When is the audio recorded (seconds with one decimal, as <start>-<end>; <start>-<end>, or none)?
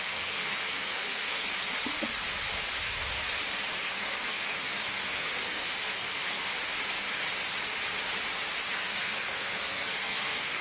1.5-3.8; 6.5-8.7